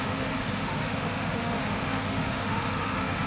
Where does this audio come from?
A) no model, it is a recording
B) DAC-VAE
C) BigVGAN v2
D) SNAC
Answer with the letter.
B